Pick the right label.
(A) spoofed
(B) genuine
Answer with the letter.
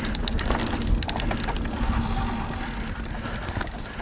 B